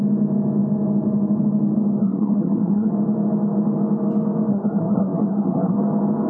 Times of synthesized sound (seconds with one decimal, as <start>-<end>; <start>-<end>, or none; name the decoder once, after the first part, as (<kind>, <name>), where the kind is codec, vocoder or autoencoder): 2.0-2.9 (codec, SNAC); 4.5-5.8